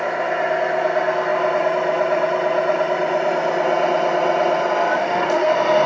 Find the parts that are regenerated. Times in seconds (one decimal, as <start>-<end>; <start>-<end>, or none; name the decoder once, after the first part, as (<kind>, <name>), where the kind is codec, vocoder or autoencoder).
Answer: 5.0-5.5 (autoencoder, DAC-VAE)